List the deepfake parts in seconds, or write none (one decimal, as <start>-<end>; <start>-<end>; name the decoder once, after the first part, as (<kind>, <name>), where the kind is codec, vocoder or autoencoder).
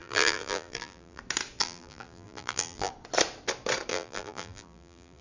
0.0-1.2 (vocoder, BigVGAN v2); 1.6-2.9; 3.9-5.2